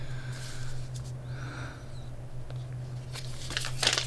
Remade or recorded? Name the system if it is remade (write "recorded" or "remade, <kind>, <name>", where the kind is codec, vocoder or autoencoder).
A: recorded